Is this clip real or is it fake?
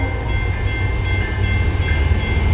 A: real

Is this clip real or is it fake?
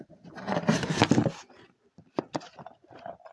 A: fake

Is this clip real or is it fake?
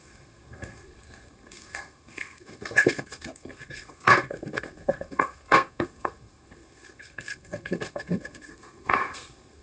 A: fake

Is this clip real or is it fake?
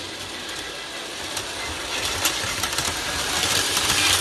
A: fake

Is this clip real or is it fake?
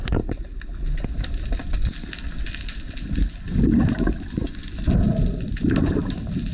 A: real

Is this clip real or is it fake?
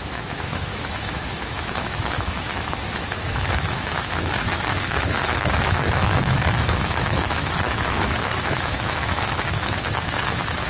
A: fake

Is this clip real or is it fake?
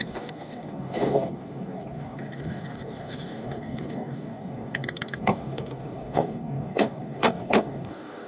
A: fake